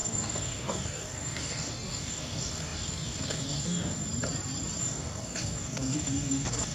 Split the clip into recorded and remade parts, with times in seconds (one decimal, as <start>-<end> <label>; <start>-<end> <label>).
0.0-4.0 remade; 4.0-4.8 recorded; 4.8-6.7 remade